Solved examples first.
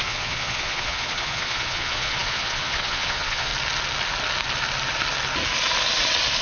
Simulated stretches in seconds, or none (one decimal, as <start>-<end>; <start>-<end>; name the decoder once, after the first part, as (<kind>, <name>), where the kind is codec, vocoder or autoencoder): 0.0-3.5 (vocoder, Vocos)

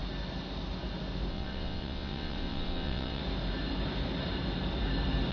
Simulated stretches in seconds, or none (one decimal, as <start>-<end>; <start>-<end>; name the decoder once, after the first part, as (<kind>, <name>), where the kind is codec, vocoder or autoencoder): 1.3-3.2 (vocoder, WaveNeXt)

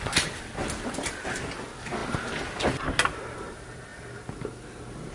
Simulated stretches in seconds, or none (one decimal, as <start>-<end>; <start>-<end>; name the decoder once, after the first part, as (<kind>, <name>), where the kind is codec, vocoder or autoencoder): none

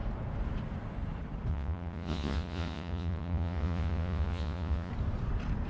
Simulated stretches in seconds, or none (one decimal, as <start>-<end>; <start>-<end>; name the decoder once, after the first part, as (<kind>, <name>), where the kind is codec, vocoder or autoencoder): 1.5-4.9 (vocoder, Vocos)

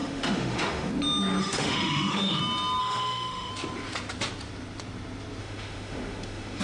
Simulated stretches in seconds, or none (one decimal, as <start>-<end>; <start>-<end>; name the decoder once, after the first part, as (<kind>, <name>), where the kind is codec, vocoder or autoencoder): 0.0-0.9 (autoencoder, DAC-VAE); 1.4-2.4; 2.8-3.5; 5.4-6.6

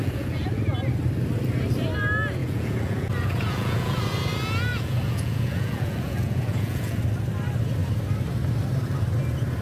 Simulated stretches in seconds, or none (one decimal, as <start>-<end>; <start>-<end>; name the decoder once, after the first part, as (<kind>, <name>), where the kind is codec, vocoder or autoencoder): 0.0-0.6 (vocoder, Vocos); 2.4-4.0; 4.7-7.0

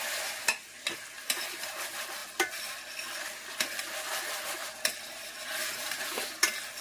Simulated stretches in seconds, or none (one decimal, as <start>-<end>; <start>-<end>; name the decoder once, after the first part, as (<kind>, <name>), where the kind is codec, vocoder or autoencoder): none